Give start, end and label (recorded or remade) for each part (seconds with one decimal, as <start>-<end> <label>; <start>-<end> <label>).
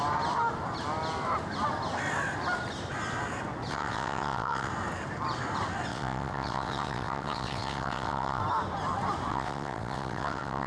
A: 0.0-3.7 recorded; 3.7-4.7 remade; 4.7-5.9 recorded; 5.9-8.4 remade; 8.4-9.3 recorded; 9.3-10.7 remade